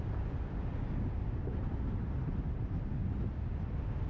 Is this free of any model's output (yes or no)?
yes